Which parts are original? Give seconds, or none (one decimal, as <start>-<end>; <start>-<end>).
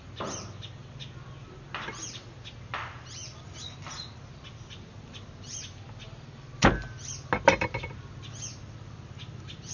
0.0-9.7